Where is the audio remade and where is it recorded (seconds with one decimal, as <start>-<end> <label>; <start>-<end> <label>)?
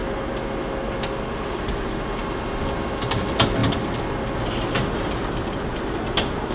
0.0-6.5 recorded